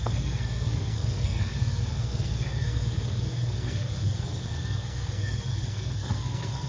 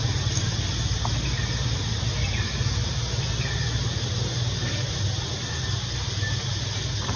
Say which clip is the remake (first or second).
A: first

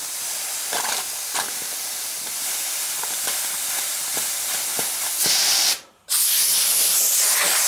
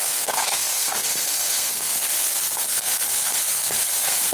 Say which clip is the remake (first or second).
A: second